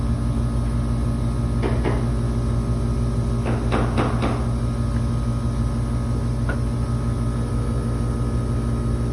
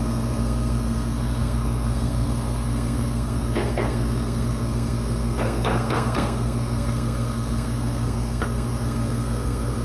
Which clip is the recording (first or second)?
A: first